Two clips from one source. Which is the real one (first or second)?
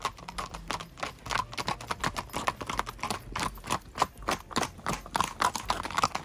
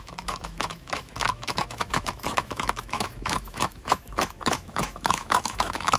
first